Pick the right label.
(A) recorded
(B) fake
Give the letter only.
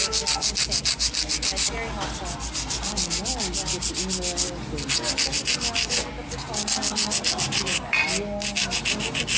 A